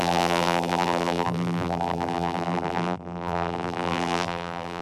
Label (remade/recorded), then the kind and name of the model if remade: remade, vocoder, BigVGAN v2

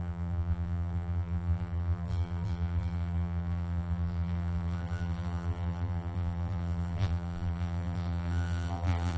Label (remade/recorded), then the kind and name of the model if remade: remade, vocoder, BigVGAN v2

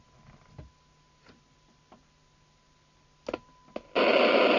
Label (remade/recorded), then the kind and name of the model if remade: recorded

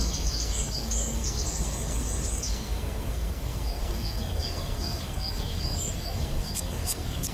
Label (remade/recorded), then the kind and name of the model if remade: remade, codec, SNAC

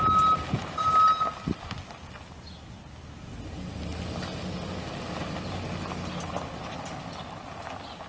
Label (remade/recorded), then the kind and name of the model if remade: recorded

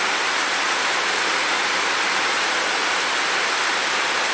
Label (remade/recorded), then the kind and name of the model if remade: recorded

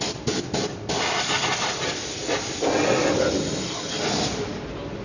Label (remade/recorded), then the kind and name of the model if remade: recorded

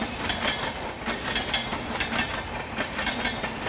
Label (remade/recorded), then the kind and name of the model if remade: recorded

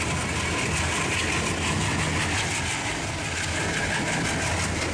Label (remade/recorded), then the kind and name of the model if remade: recorded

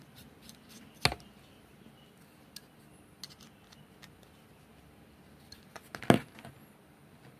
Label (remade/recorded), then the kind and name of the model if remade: recorded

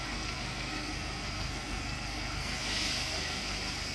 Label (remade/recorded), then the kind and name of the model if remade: remade, codec, SNAC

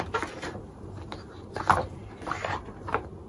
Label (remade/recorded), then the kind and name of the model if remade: remade, vocoder, BigVGAN v2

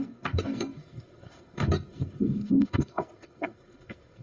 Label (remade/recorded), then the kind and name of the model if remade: remade, codec, SNAC